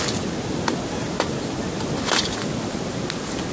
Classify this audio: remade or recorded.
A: recorded